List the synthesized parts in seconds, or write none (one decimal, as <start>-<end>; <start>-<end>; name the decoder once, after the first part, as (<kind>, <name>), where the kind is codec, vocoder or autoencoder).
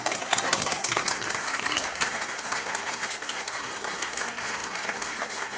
0.0-5.6 (codec, SNAC)